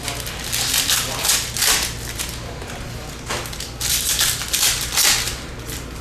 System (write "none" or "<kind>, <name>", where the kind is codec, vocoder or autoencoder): none